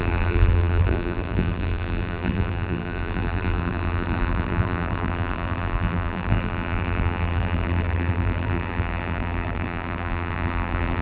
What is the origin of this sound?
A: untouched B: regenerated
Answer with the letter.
B